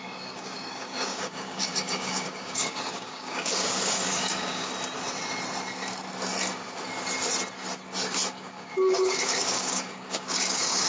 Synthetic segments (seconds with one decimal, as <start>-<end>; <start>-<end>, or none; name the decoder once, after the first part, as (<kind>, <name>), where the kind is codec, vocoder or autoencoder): 0.0-4.7 (codec, DAC); 8.4-10.9